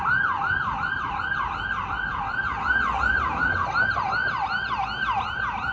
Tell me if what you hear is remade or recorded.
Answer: recorded